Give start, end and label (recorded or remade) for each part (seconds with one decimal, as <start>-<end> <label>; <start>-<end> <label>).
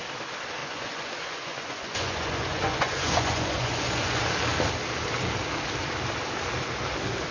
0.0-0.6 recorded; 0.6-4.2 remade; 4.2-7.3 recorded